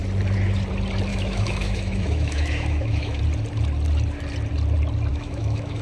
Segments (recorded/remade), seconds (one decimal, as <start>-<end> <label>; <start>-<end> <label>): 0.0-1.1 recorded; 1.1-3.2 remade; 3.2-5.1 recorded; 5.1-5.8 remade